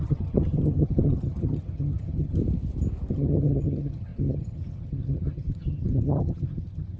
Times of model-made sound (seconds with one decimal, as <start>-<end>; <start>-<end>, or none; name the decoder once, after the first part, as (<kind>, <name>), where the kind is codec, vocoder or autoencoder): 0.0-2.4 (vocoder, HiFi-GAN); 3.1-7.0